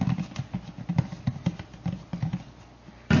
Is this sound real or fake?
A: real